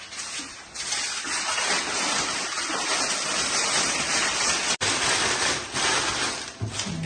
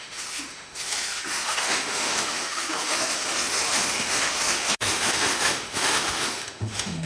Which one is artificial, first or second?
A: second